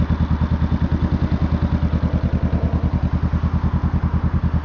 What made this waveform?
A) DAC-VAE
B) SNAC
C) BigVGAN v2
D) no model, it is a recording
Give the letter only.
D